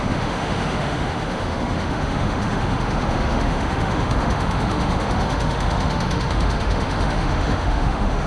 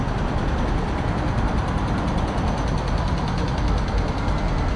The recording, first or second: second